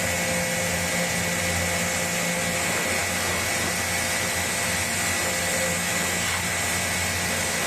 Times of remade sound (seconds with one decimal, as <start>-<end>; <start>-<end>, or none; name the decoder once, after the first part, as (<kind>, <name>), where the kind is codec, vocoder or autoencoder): none